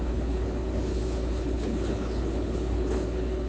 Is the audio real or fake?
fake